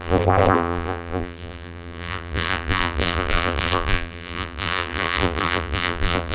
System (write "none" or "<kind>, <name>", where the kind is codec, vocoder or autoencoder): vocoder, BigVGAN v2